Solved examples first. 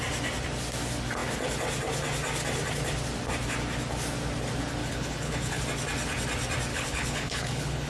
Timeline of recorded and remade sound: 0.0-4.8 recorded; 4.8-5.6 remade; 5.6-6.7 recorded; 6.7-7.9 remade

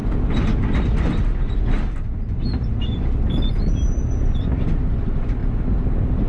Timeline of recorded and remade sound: 0.0-2.2 recorded; 2.2-5.4 remade; 5.4-6.3 recorded

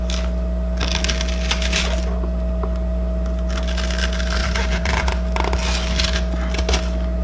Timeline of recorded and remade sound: 0.0-4.4 recorded; 4.4-5.0 remade; 5.0-7.2 recorded

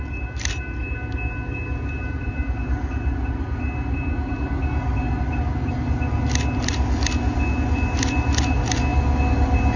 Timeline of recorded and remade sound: 0.0-9.8 recorded

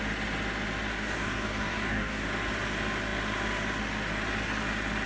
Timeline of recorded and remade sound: 0.0-0.9 recorded; 0.9-2.3 remade; 2.3-5.1 recorded

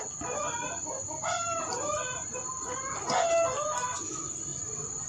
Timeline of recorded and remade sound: 0.0-4.5 recorded; 4.5-5.1 remade

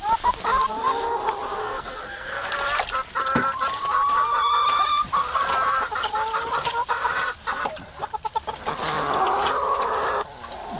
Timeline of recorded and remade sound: 0.0-1.6 recorded; 1.6-2.5 remade; 2.5-10.8 recorded